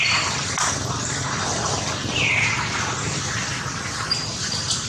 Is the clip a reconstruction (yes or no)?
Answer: yes